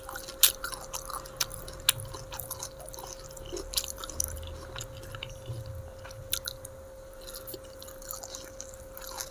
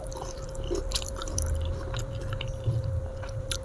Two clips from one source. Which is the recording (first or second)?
first